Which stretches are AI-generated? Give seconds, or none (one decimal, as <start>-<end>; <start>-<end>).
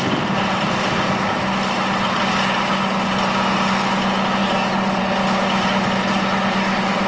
4.4-5.0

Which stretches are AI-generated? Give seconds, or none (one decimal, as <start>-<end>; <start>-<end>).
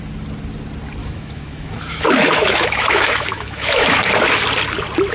1.0-4.1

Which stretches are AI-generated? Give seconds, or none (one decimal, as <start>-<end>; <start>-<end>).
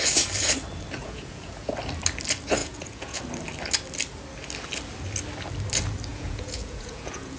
1.0-1.7; 2.6-3.2; 6.1-7.4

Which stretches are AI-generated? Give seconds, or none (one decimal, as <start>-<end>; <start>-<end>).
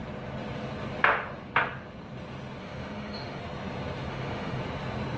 2.6-3.4; 4.1-4.6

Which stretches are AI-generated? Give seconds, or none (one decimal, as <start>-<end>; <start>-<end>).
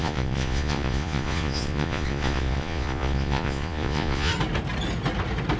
0.0-4.3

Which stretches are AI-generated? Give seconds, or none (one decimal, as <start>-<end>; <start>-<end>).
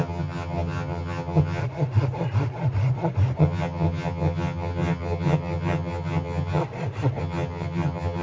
0.0-1.6; 3.4-6.6; 7.2-8.2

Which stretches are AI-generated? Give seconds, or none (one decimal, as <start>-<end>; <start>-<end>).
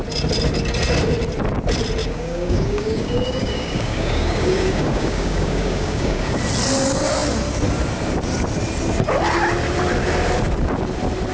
2.0-6.4